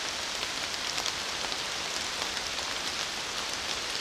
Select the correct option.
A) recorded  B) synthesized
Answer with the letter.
A